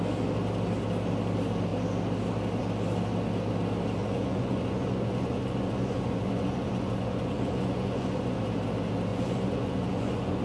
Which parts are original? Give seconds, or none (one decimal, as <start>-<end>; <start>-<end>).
0.0-4.0; 8.4-9.1